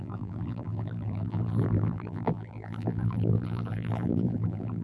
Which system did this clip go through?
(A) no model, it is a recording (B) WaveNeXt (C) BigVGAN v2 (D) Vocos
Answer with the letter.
C